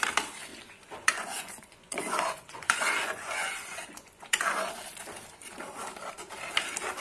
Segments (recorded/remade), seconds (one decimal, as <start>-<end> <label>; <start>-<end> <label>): 0.0-0.5 recorded; 0.5-4.7 remade; 4.7-7.0 recorded